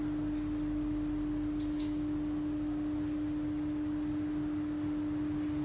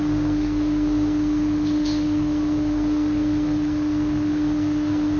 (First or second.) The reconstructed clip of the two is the second